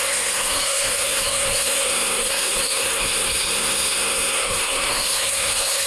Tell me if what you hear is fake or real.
fake